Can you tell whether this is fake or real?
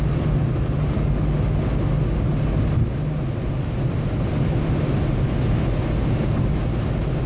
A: real